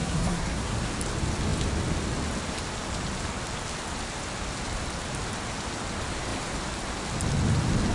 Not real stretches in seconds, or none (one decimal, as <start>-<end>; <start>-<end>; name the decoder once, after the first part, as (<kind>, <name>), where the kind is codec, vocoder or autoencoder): 0.0-0.9 (codec, SNAC)